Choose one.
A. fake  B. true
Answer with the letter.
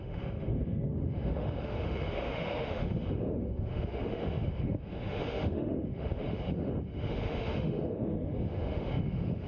A